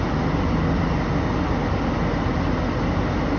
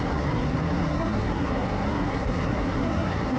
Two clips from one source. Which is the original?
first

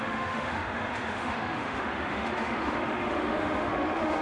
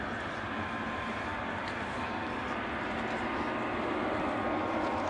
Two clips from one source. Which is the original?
second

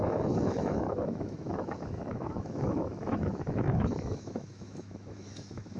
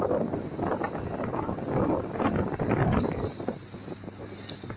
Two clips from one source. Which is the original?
second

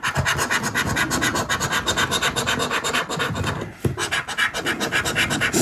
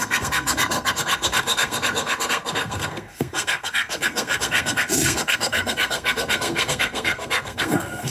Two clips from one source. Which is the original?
first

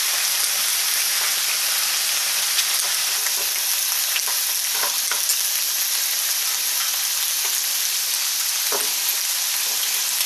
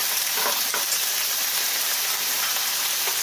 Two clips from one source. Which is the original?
first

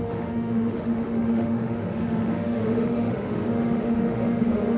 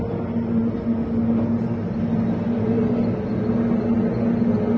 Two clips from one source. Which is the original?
second